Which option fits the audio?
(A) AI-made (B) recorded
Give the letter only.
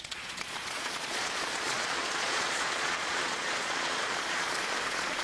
A